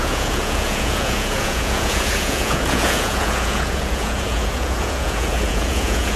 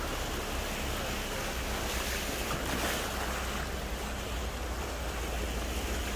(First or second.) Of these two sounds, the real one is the second